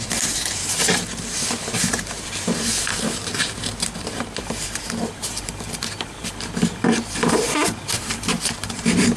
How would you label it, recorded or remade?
remade